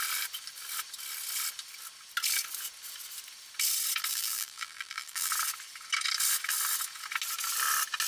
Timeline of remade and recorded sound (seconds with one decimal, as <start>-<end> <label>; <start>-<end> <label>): 0.0-4.1 recorded; 4.1-5.3 remade; 5.3-8.1 recorded